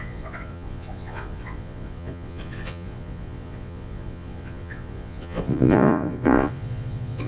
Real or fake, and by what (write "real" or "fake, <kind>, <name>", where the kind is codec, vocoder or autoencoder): fake, vocoder, Vocos